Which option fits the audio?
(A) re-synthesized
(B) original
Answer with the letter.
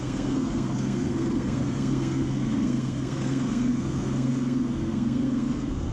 A